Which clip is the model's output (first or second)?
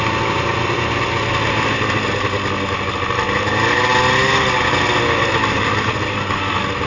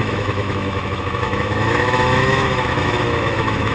second